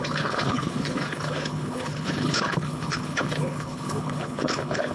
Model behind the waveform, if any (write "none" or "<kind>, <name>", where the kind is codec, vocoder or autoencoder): codec, HILCodec